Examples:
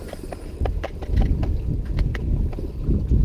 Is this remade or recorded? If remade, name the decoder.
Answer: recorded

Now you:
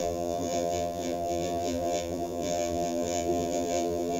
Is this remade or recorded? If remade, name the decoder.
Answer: remade, vocoder, BigVGAN v2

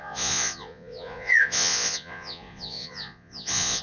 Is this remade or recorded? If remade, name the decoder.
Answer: remade, vocoder, Vocos